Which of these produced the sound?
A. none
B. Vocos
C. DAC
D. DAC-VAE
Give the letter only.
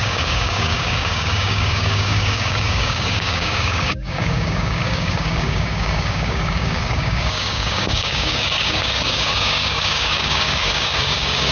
C